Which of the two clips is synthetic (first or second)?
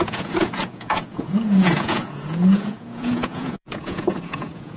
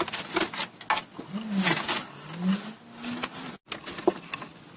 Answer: first